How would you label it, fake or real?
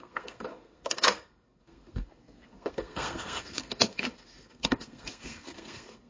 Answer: fake